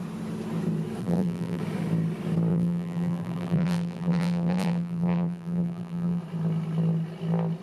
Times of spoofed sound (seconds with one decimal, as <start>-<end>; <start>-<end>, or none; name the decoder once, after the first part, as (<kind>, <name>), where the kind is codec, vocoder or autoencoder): 1.0-1.6 (vocoder, BigVGAN v2); 2.5-6.2